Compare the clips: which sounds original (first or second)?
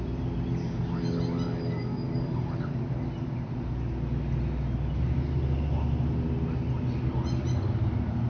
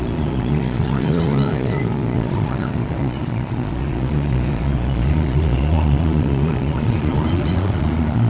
first